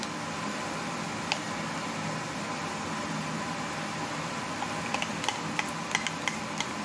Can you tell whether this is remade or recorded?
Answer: recorded